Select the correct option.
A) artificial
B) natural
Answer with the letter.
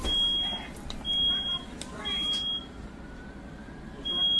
B